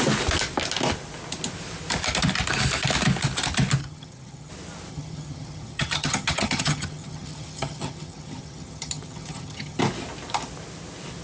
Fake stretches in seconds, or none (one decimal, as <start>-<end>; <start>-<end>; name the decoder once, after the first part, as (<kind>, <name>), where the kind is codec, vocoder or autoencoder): 3.8-4.5 (vocoder, HiFi-GAN); 4.9-9.8